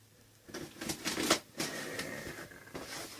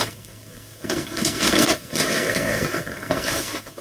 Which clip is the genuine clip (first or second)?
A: first